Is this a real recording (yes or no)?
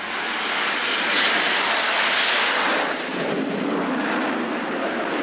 yes